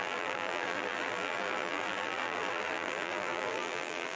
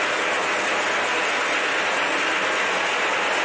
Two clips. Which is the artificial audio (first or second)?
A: first